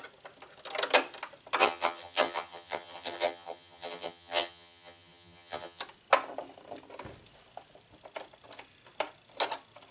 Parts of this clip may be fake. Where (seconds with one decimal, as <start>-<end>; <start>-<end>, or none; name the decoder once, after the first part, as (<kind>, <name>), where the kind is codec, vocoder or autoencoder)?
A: 1.6-5.8 (vocoder, HiFi-GAN)